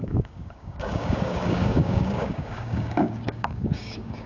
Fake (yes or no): yes